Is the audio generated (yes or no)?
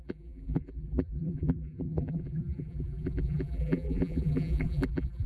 yes